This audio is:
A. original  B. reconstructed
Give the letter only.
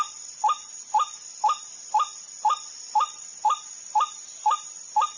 A